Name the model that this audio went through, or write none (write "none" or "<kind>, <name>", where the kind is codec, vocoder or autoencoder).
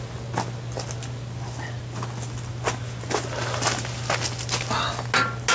none